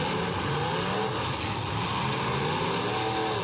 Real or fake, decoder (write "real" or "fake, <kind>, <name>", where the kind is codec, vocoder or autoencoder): real